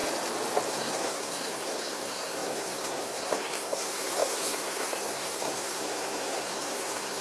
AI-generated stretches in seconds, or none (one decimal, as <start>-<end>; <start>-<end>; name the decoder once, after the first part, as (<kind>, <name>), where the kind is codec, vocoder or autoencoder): 0.7-7.2 (codec, SNAC)